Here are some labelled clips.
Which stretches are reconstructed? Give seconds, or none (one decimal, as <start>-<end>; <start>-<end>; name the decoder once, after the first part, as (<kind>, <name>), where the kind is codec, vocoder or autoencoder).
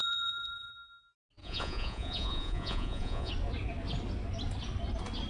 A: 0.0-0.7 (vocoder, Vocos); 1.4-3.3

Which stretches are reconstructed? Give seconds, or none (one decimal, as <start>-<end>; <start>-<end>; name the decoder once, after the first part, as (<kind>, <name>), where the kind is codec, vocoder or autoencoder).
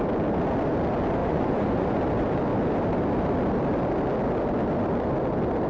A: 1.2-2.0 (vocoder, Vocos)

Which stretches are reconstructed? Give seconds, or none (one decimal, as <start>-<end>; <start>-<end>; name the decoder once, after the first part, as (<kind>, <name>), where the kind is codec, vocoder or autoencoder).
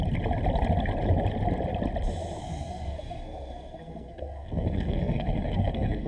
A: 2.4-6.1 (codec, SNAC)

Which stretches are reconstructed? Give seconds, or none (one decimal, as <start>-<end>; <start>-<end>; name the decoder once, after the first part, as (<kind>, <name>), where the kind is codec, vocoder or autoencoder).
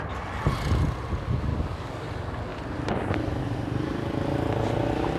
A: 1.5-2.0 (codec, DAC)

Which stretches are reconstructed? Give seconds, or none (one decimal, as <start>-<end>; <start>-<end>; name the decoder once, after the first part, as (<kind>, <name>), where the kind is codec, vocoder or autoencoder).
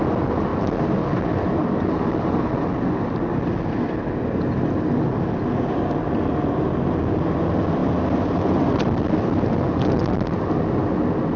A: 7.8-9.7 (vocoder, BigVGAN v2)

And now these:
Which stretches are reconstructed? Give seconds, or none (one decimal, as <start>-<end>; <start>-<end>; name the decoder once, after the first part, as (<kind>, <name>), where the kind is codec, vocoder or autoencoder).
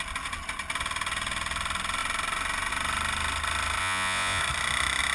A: 3.8-4.4 (vocoder, Vocos)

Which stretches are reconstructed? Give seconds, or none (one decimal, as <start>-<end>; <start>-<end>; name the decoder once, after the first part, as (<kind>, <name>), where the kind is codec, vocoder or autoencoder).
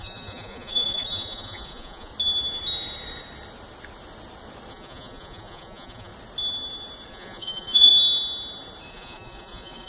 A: 0.0-2.1 (vocoder, Vocos); 4.7-6.1; 7.1-7.9; 8.9-9.9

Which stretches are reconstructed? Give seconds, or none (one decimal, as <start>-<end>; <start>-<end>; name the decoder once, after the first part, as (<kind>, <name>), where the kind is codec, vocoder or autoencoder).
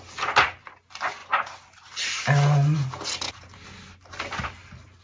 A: none